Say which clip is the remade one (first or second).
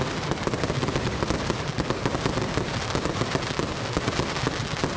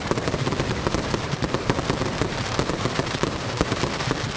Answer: second